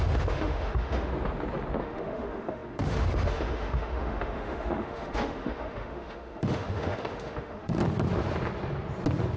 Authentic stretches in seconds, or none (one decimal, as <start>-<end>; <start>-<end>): 1.1-1.8; 7.8-9.4